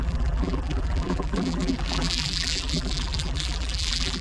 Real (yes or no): no